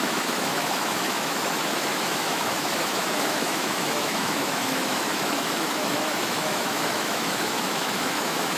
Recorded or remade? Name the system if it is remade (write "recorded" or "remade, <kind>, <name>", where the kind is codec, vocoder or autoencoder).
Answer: remade, autoencoder, DAC-VAE